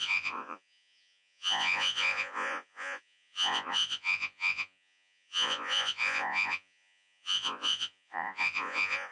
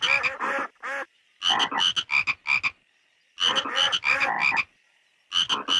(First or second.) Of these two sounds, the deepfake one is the first